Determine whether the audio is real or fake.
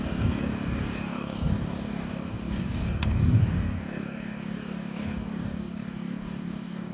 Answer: fake